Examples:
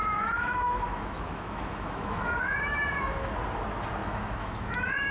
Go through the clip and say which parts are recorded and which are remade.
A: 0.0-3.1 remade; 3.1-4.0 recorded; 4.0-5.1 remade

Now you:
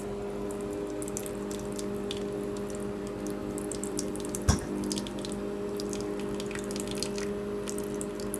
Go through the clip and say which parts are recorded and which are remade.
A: 0.0-3.4 recorded; 3.4-4.1 remade; 4.1-8.4 recorded

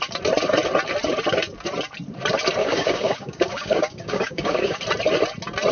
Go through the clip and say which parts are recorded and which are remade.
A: 0.0-2.6 recorded; 2.6-4.8 remade; 4.8-5.7 recorded

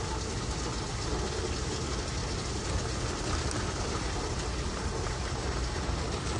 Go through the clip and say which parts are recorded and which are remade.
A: 0.0-6.4 recorded

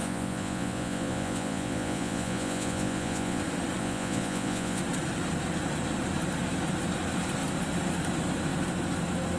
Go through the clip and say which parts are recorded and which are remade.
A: 0.0-3.4 remade; 3.4-3.8 recorded; 3.8-4.8 remade; 4.8-9.4 recorded